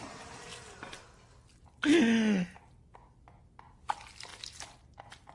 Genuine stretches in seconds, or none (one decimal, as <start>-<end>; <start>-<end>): 0.0-5.3